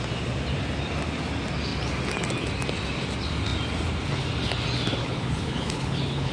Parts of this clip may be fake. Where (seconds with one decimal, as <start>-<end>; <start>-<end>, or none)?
5.0-6.3